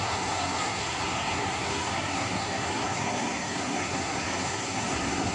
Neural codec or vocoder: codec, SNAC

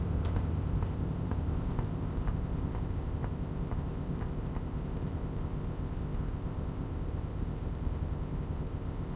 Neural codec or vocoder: codec, ZipCodec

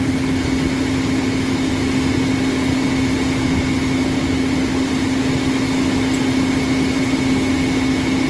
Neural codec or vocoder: none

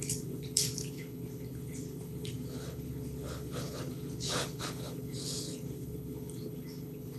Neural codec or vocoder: codec, HILCodec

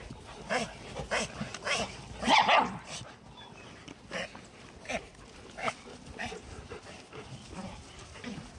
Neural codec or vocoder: none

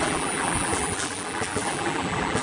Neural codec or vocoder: vocoder, BigVGAN v2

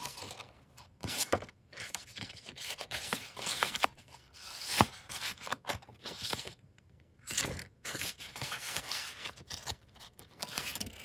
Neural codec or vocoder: codec, SNAC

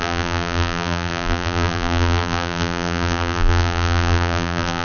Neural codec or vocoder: vocoder, BigVGAN v2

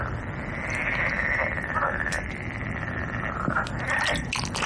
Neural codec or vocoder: none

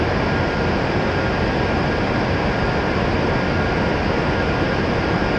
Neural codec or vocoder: none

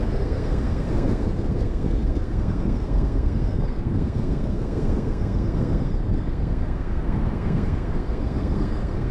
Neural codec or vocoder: codec, SNAC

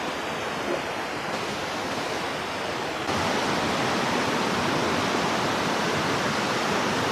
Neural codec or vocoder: none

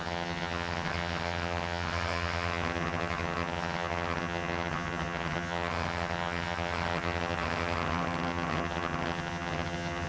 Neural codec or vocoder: vocoder, HiFi-GAN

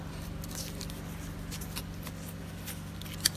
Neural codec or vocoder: none